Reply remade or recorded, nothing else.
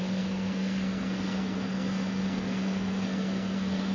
remade